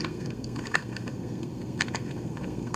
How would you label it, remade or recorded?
remade